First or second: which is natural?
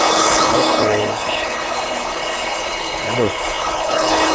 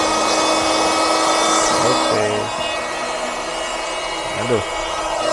second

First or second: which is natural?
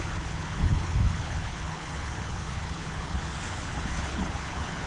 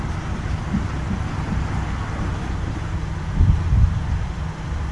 second